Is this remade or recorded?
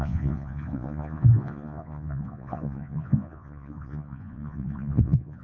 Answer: remade